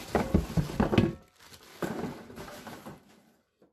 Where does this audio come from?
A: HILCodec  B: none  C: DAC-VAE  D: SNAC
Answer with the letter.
B